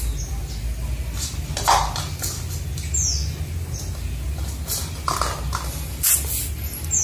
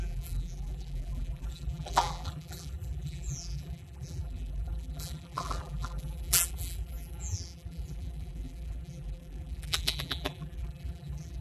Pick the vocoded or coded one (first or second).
second